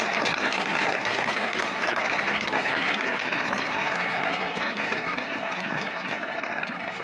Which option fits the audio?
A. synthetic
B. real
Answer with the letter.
A